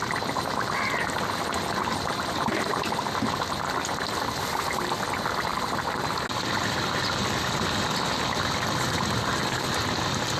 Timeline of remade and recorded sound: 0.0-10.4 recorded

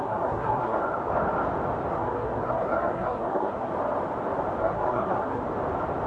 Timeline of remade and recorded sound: 0.0-0.8 remade; 0.8-1.9 recorded; 1.9-3.7 remade; 3.7-4.6 recorded; 4.6-5.4 remade; 5.4-6.1 recorded

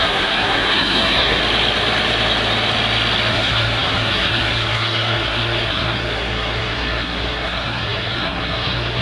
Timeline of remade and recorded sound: 0.0-1.4 remade; 1.4-3.3 recorded; 3.3-9.0 remade

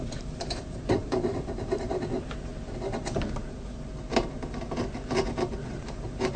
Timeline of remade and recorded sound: 0.0-2.5 remade; 2.5-5.7 recorded; 5.7-6.4 remade

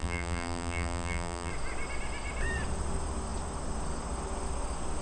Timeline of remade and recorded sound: 0.0-1.5 remade; 1.5-5.0 recorded

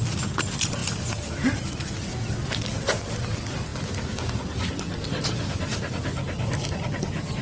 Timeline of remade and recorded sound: 0.0-7.4 recorded